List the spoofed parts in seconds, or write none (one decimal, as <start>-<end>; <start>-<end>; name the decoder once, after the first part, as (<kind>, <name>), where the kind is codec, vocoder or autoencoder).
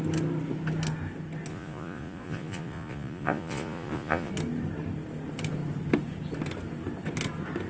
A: 1.5-4.3 (vocoder, Vocos)